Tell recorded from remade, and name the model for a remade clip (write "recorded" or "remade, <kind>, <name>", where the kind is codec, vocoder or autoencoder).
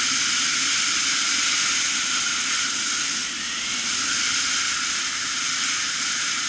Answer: recorded